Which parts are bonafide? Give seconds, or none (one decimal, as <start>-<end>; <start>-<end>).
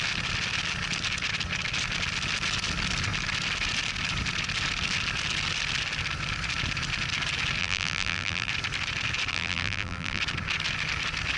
0.0-7.6; 8.5-9.3; 10.2-11.4